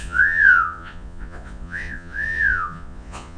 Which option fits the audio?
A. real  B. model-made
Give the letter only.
B